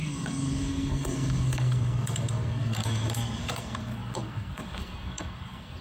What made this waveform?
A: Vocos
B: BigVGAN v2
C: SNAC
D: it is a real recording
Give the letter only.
C